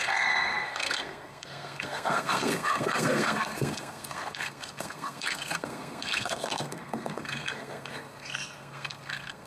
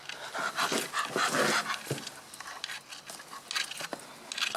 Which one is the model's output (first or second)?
first